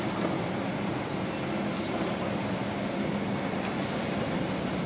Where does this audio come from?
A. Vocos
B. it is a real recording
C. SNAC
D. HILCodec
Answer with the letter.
B